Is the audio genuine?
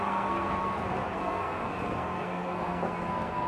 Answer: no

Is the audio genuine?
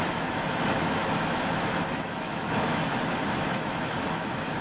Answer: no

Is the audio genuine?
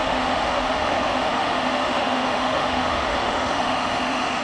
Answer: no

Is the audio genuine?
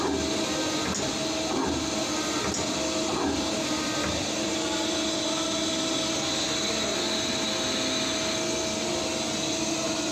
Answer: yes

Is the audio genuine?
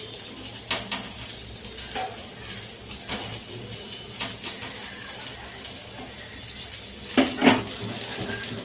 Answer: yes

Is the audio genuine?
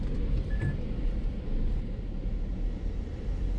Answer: yes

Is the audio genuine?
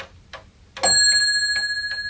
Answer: yes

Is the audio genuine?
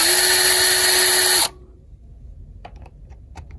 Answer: yes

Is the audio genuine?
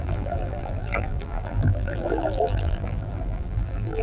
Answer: no